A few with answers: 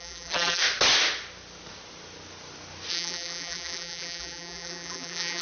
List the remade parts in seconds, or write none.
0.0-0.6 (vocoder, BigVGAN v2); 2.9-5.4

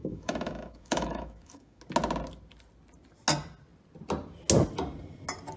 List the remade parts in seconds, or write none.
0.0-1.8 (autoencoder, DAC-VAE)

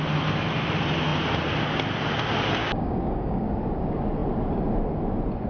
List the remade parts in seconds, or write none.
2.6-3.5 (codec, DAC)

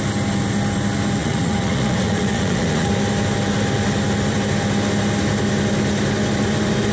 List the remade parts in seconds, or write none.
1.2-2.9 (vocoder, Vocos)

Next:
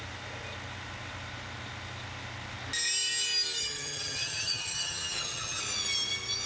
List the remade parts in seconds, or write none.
3.6-5.6 (vocoder, HiFi-GAN)

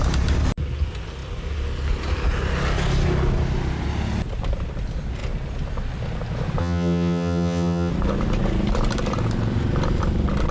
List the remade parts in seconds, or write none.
6.6-7.9 (vocoder, HiFi-GAN)

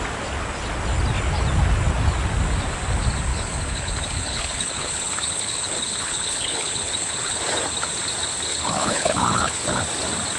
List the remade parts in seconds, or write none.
3.3-7.4 (codec, HILCodec); 8.5-9.8